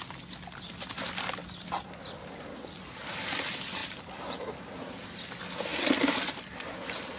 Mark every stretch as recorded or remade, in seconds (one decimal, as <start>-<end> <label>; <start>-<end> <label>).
0.0-7.2 recorded